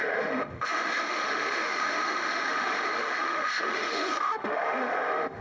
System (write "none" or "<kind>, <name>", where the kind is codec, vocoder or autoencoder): autoencoder, DAC-VAE